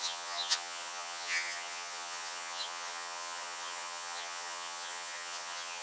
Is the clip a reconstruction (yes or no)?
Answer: yes